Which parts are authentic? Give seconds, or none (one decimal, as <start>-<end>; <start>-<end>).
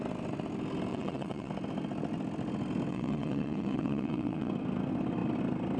0.0-0.9; 1.5-2.9; 4.5-5.8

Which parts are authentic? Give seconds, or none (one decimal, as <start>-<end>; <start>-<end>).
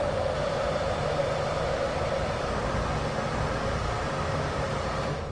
0.0-5.3